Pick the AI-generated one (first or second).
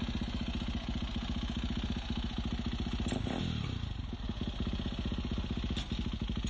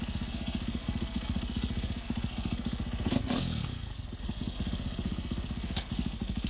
second